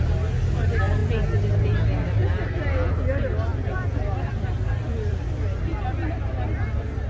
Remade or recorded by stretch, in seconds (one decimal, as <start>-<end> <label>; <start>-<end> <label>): 0.0-3.5 recorded; 3.5-5.2 remade; 5.2-7.1 recorded